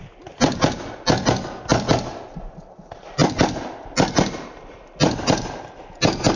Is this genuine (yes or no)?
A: yes